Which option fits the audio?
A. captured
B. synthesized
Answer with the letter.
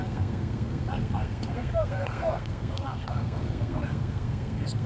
B